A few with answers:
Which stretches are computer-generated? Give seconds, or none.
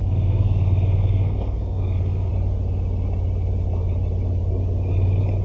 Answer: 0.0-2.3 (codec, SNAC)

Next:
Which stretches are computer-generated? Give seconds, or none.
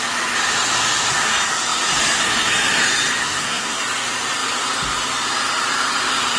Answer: 3.2-3.8 (codec, SNAC)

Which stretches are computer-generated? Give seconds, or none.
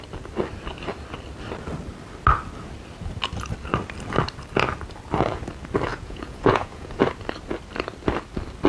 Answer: 5.9-7.0 (vocoder, Vocos)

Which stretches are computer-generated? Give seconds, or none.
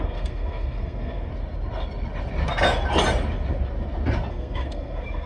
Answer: 0.0-1.3 (codec, SNAC); 4.3-5.3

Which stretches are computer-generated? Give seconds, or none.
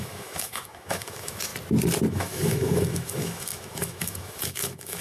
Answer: 0.0-1.5 (autoencoder, DAC-VAE); 2.1-5.0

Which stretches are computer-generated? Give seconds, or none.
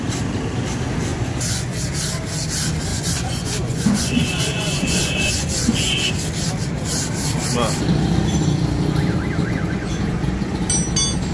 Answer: 1.1-1.8 (vocoder, Vocos); 2.9-6.1; 9.4-10.6